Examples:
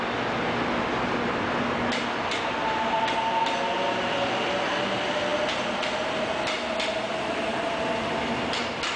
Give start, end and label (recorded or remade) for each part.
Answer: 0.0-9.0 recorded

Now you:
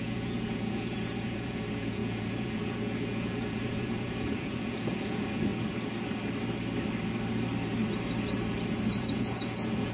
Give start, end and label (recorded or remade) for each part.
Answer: 0.0-5.5 remade; 5.5-8.9 recorded; 8.9-9.9 remade

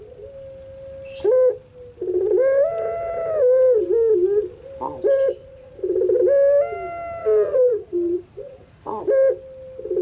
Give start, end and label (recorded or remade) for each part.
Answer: 0.0-5.4 recorded; 5.4-6.0 remade; 6.0-7.2 recorded; 7.2-9.0 remade; 9.0-10.0 recorded

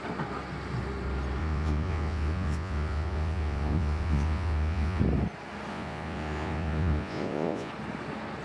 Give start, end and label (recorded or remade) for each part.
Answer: 0.0-1.4 recorded; 1.4-5.0 remade; 5.0-5.7 recorded; 5.7-7.7 remade; 7.7-8.4 recorded

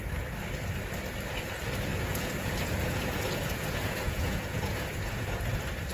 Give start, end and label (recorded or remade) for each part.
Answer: 0.0-1.9 recorded; 1.9-5.4 remade; 5.4-5.9 recorded